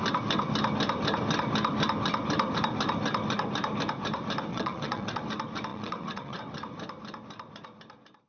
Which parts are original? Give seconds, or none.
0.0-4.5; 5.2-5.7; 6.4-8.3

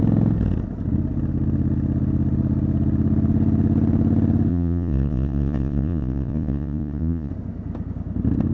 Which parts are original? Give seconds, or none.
0.0-4.5; 7.3-8.5

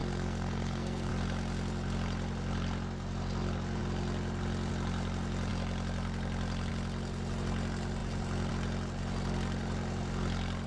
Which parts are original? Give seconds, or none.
1.1-10.7

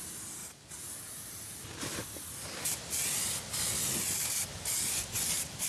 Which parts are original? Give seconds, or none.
0.0-5.7

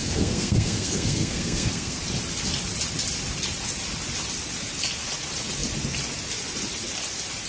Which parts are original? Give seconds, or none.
2.0-7.5

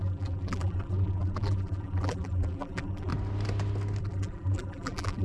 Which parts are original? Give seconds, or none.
3.1-4.0

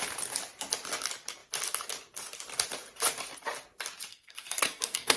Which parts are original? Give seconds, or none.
0.0-4.1